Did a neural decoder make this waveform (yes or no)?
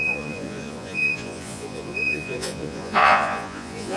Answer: yes